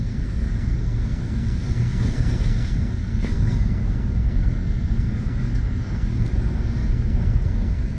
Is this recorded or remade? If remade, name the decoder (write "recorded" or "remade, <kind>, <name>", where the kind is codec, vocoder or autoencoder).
remade, codec, SNAC